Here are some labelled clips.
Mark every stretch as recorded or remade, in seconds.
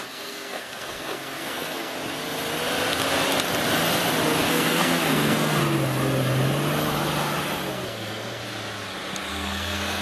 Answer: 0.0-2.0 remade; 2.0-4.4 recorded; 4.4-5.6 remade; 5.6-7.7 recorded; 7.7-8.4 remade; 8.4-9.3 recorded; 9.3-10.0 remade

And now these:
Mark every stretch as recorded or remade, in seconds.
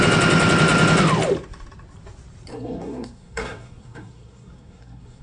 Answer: 0.0-2.5 recorded; 2.5-5.2 remade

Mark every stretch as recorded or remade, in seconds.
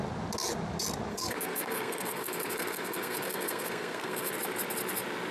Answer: 0.0-1.1 recorded; 1.1-4.3 remade; 4.3-5.3 recorded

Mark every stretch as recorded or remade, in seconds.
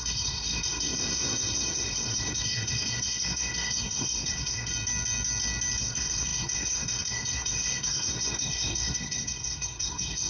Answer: 0.0-4.7 remade; 4.7-5.8 recorded; 5.8-10.3 remade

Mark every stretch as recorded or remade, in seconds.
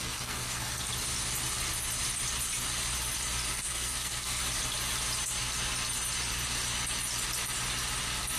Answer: 0.0-0.9 remade; 0.9-3.5 recorded; 3.5-4.4 remade; 4.4-8.4 recorded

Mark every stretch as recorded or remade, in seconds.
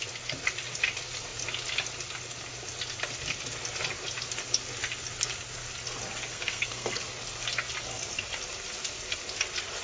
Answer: 0.0-6.2 recorded; 6.2-7.0 remade; 7.0-9.8 recorded